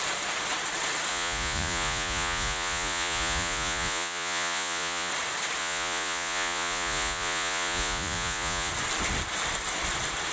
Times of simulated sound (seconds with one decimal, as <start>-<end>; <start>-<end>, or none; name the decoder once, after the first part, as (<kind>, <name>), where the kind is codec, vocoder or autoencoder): 1.1-5.1 (vocoder, Vocos); 5.6-8.7